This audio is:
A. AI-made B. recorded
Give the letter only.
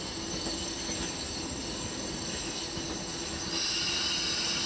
B